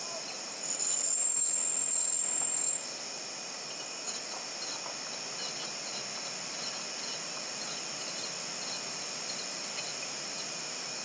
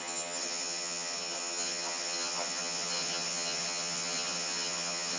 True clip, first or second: first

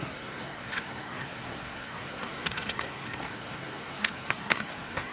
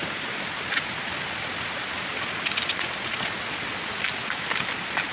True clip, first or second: second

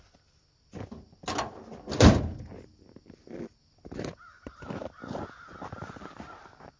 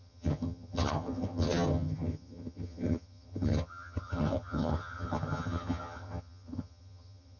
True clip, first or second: first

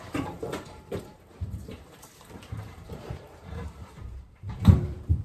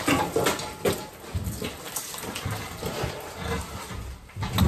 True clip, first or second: second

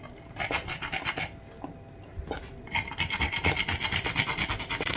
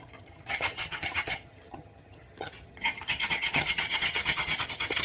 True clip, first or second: first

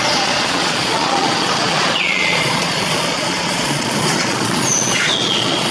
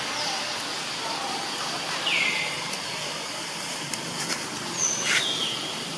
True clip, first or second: second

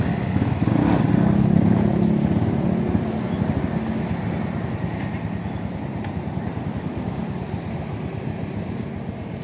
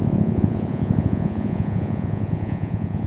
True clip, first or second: first